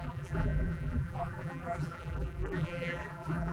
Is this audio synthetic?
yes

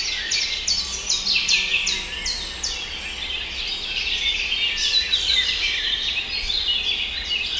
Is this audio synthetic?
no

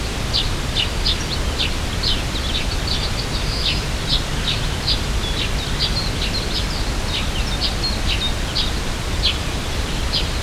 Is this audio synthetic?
no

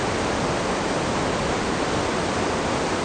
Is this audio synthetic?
no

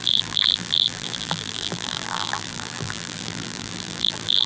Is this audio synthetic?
yes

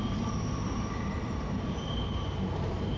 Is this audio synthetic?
yes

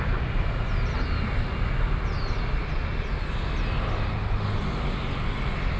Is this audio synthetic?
no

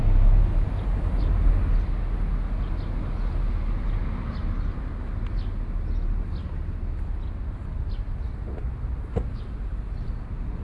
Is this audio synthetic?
no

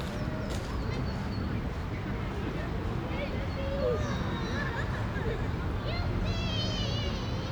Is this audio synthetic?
no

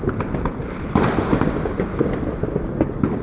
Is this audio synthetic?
no